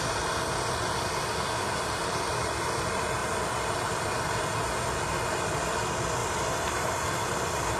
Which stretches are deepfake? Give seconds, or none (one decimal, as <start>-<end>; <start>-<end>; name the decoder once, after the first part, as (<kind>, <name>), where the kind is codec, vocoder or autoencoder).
6.2-6.8 (vocoder, BigVGAN v2)